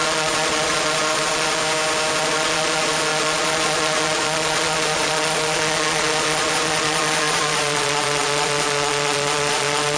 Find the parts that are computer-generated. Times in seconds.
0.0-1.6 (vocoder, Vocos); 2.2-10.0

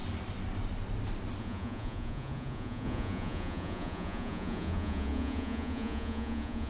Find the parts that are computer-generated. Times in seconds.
1.4-6.7 (vocoder, Vocos)

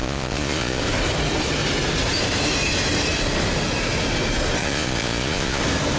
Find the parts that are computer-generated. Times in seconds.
0.0-0.8 (vocoder, Vocos); 4.6-5.6